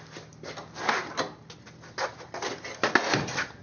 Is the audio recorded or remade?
recorded